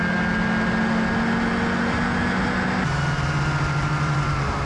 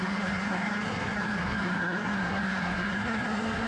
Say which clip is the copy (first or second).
second